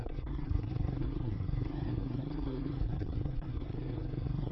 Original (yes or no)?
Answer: no